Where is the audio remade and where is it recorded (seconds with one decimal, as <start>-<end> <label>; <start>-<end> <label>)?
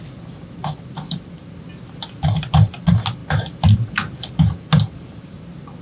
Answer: 0.0-5.8 recorded